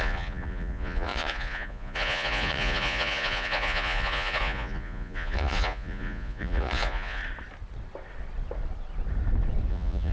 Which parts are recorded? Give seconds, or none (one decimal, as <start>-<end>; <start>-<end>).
7.2-9.7